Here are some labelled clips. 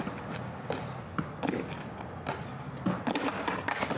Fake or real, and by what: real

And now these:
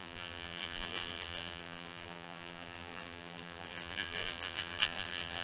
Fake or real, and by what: fake, vocoder, BigVGAN v2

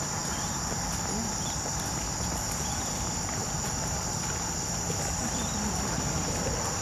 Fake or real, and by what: real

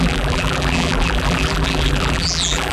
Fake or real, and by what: fake, vocoder, BigVGAN v2